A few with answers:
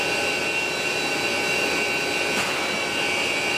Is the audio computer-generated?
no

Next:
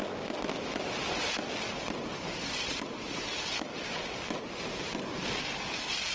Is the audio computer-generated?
no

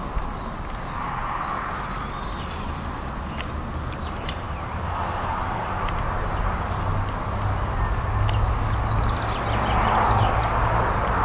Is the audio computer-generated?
no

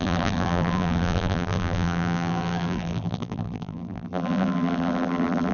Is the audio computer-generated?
yes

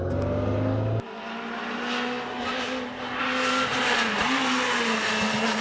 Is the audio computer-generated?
no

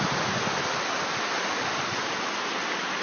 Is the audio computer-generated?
no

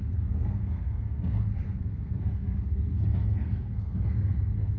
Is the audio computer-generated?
yes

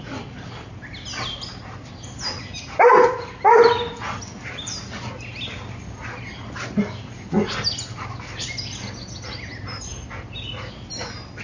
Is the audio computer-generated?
no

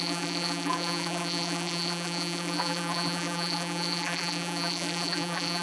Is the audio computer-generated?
yes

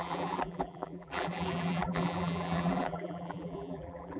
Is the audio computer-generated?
yes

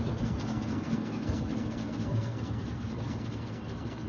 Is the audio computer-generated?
yes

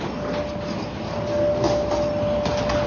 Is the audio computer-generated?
no